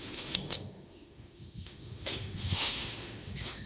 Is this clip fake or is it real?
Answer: fake